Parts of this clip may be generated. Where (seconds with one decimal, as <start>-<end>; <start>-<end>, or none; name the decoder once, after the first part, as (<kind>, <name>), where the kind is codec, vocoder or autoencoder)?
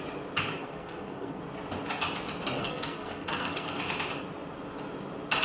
0.6-1.4 (codec, SNAC); 2.6-3.8